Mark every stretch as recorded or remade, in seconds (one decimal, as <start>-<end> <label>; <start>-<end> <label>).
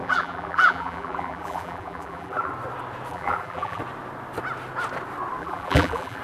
0.0-2.5 remade; 2.5-3.1 recorded; 3.1-3.8 remade; 3.8-5.4 recorded; 5.4-6.2 remade